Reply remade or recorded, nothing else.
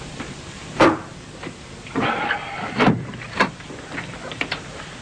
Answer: remade